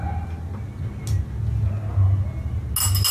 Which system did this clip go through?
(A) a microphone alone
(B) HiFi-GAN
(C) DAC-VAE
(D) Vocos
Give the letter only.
A